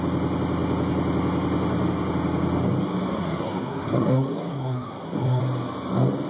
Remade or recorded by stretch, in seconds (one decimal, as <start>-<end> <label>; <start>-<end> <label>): 0.0-3.1 recorded; 3.1-5.4 remade; 5.4-6.3 recorded